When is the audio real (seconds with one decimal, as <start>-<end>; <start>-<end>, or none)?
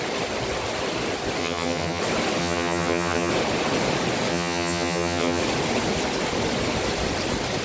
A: 0.0-1.4; 2.0-2.4; 3.3-4.3; 5.4-7.6